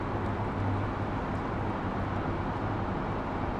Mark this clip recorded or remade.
recorded